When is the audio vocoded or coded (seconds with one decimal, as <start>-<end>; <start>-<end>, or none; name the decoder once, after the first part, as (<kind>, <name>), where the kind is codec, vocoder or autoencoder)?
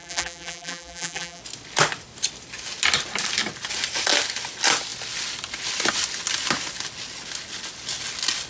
0.0-1.4 (vocoder, BigVGAN v2)